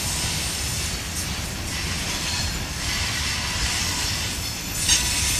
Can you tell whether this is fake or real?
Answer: real